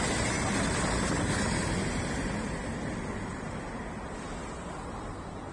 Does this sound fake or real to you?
real